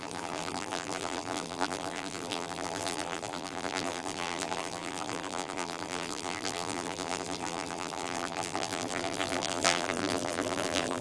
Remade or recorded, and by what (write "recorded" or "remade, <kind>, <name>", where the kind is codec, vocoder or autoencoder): remade, vocoder, BigVGAN v2